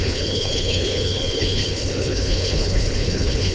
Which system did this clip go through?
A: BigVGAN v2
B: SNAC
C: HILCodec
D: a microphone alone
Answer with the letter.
C